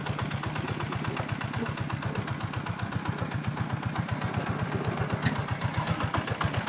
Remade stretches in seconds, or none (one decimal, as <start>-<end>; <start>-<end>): none